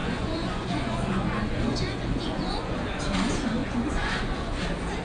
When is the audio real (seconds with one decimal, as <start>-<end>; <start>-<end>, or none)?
3.0-3.6; 4.6-5.0